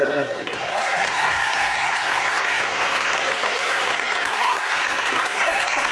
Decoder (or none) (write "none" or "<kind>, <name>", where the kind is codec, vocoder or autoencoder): codec, SNAC